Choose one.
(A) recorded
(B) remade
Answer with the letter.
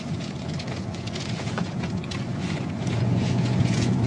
B